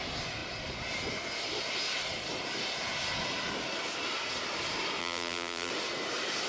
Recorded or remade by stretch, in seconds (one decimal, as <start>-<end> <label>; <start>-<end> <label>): 0.0-5.0 recorded; 5.0-5.7 remade; 5.7-6.5 recorded